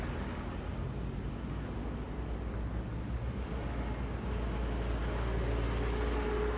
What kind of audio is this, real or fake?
real